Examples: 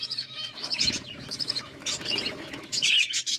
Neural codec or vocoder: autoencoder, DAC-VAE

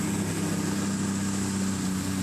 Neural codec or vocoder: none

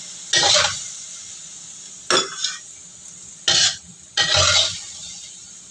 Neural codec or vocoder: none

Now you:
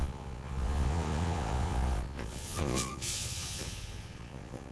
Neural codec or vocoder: vocoder, Vocos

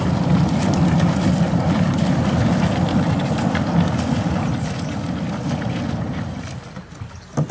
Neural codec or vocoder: none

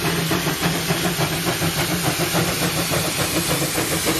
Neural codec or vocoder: none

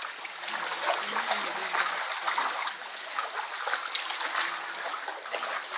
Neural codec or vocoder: none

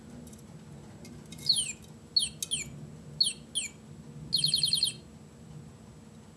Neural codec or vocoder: none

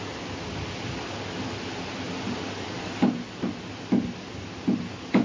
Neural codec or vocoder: none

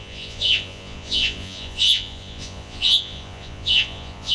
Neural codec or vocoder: vocoder, Vocos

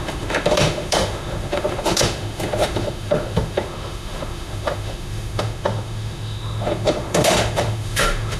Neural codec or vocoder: autoencoder, DAC-VAE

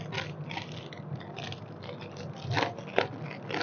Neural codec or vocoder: none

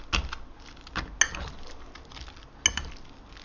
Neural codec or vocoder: none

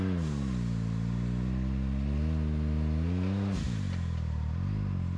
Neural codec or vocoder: none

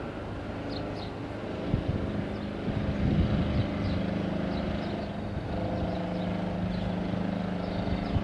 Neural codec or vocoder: none